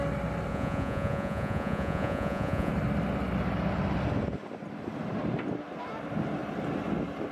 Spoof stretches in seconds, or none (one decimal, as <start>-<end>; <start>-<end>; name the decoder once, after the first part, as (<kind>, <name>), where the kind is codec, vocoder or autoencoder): 0.5-2.7 (vocoder, Vocos)